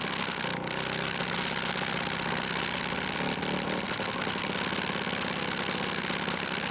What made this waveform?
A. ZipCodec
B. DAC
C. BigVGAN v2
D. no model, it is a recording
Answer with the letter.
D